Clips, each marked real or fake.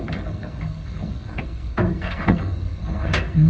fake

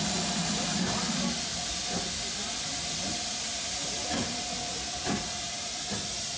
real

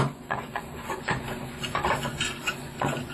fake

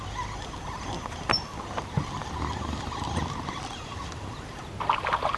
real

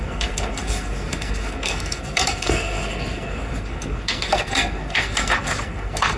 fake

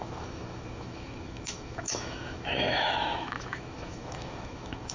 fake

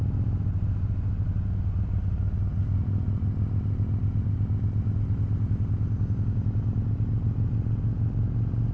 real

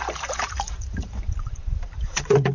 fake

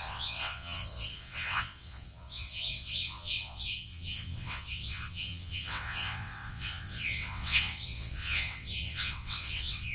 fake